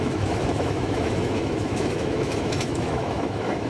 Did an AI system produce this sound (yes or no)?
yes